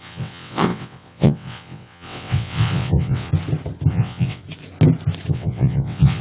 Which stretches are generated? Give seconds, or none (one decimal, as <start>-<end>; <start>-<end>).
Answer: 0.0-3.3; 3.9-4.4; 5.3-6.2